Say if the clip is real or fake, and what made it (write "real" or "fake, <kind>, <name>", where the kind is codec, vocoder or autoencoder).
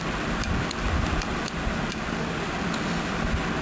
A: real